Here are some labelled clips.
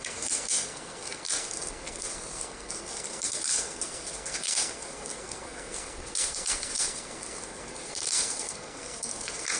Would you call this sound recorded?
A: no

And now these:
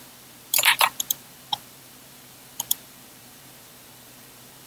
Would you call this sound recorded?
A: no